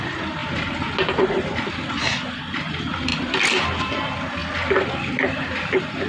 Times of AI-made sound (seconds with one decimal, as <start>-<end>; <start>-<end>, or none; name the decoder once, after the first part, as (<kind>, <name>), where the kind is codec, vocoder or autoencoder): 0.0-0.4 (vocoder, BigVGAN v2); 1.7-4.4; 5.4-6.1